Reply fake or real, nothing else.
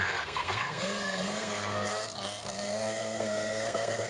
fake